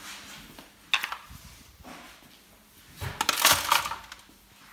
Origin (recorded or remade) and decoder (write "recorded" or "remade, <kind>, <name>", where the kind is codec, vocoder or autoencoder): recorded